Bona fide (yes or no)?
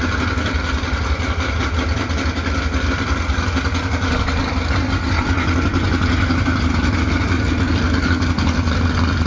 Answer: yes